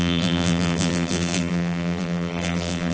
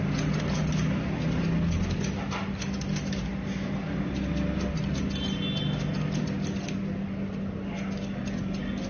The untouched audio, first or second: second